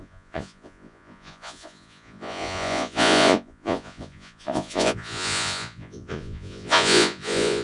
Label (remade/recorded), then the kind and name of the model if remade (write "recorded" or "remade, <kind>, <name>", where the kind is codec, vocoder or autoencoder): remade, vocoder, Vocos